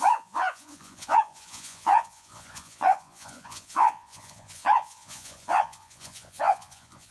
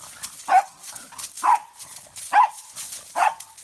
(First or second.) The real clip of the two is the second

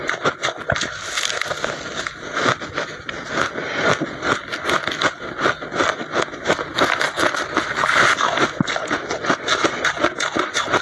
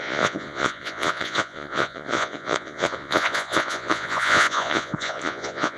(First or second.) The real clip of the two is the first